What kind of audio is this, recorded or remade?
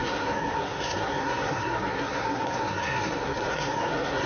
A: remade